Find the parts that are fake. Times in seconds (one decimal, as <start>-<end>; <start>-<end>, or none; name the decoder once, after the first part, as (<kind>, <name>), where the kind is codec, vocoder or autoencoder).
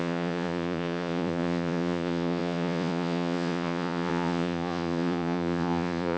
0.0-6.2 (vocoder, Vocos)